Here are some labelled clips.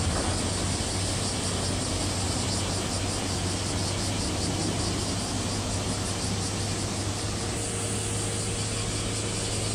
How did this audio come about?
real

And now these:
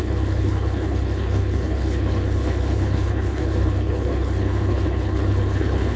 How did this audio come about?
fake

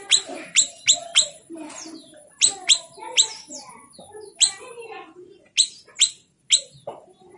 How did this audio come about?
real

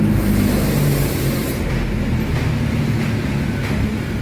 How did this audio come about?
real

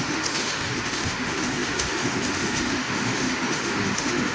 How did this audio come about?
fake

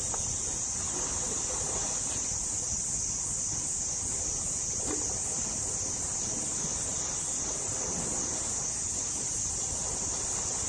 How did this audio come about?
real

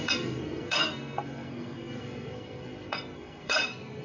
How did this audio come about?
fake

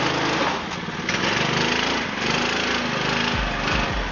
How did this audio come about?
real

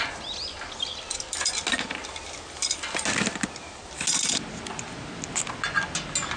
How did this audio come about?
real